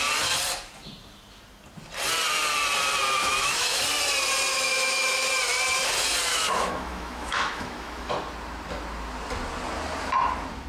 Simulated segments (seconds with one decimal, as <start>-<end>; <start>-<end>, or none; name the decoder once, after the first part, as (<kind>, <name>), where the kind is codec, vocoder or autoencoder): 3.2-3.8 (autoencoder, DAC-VAE); 4.5-5.3; 6.3-8.1

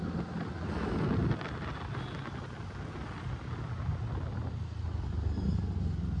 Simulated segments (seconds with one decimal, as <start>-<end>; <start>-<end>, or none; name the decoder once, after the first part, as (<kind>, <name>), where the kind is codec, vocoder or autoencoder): none

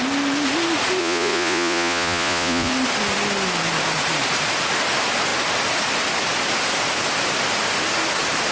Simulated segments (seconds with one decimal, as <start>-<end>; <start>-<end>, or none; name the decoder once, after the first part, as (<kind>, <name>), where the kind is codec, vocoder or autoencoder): 1.0-2.7 (vocoder, Vocos)

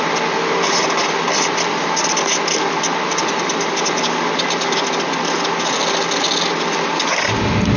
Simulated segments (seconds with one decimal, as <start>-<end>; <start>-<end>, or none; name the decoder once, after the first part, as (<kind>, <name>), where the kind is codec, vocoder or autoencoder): none

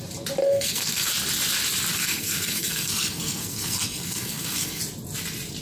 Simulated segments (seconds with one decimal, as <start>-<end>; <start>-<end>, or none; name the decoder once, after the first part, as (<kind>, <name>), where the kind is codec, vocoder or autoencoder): 0.4-1.1 (codec, SNAC); 1.9-4.8